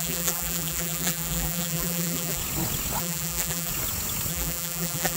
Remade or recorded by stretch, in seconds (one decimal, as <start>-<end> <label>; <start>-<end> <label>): 0.0-2.4 remade; 2.4-3.0 recorded; 3.0-3.7 remade; 3.7-4.3 recorded; 4.3-5.2 remade